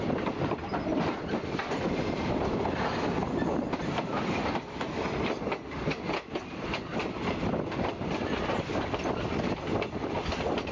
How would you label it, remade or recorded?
recorded